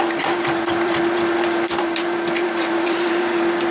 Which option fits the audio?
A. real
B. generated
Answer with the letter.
B